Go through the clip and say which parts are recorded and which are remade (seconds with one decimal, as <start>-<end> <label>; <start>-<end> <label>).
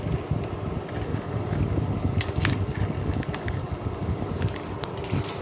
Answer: 0.0-1.1 recorded; 1.1-4.3 remade; 4.3-5.4 recorded